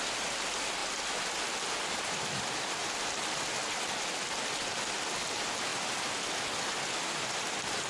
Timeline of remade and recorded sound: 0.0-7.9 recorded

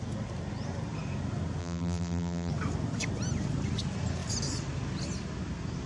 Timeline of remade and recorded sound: 0.0-1.6 recorded; 1.6-2.5 remade; 2.5-5.9 recorded